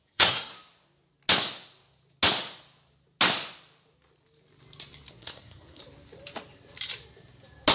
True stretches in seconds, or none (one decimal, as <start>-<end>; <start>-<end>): 0.5-5.1; 5.8-7.7